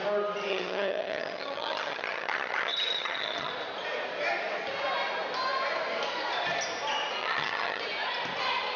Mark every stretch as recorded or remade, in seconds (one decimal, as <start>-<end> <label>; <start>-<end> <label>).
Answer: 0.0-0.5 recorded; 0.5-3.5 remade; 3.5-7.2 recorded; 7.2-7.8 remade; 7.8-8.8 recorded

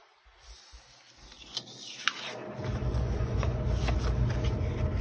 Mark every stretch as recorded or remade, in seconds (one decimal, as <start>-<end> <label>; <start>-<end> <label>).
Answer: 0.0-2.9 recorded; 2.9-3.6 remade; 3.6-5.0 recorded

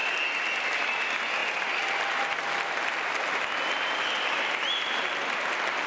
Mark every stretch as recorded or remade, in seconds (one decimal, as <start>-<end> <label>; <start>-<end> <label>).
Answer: 0.0-5.9 recorded